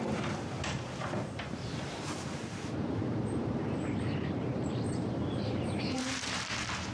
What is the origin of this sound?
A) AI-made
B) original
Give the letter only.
A